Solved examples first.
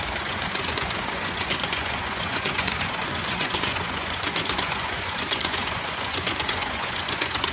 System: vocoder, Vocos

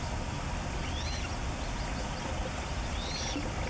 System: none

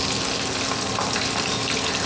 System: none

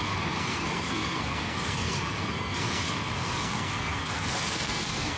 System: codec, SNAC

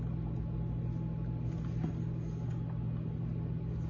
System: none